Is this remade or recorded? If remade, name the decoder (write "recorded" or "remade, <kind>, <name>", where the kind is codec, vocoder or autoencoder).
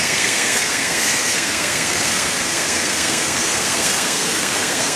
remade, codec, SNAC